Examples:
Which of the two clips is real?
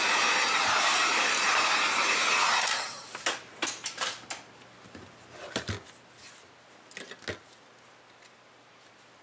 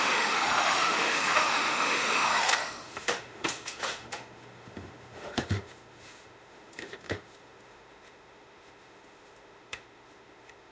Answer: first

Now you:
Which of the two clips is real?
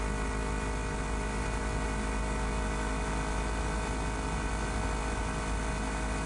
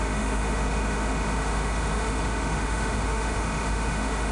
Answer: first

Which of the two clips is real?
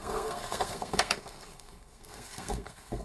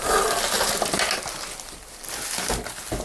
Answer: second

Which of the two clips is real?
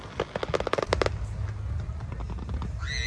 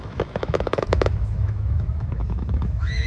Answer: first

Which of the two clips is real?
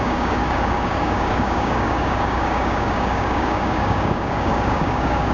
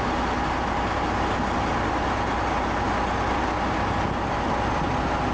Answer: second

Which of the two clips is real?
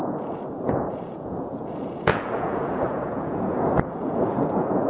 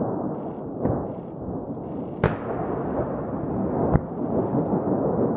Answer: second